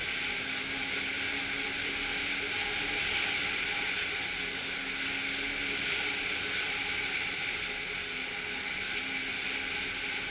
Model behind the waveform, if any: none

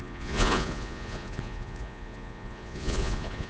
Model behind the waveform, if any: vocoder, Vocos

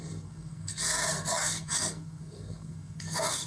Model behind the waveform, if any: codec, SNAC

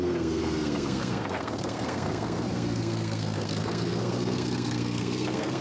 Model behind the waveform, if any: codec, SNAC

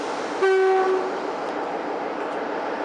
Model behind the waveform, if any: none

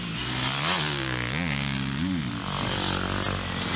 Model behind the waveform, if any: none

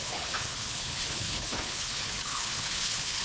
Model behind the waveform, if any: codec, HILCodec